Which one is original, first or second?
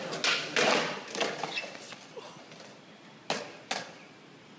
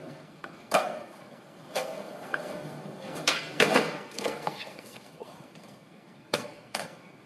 first